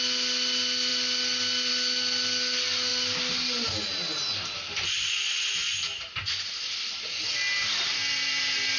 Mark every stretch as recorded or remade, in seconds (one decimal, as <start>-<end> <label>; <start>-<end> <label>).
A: 0.0-8.8 recorded